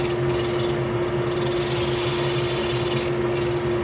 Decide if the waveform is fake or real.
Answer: real